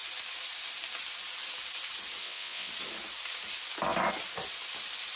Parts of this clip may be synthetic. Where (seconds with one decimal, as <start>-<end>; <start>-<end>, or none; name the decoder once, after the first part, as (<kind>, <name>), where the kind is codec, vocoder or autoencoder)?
2.2-2.7 (vocoder, WaveNeXt)

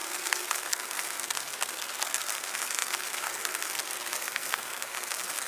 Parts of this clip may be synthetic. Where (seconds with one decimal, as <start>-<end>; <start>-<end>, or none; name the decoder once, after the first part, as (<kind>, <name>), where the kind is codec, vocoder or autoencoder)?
0.0-5.5 (codec, SNAC)